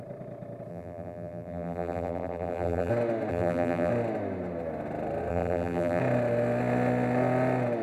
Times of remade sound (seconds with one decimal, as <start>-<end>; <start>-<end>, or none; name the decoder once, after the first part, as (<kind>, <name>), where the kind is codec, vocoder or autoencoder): 0.7-2.9 (vocoder, BigVGAN v2); 3.3-3.9; 5.3-6.0